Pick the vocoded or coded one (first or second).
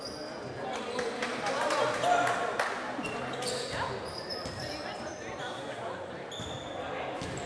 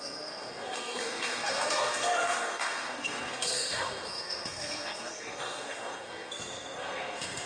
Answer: second